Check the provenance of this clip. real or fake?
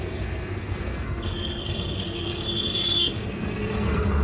fake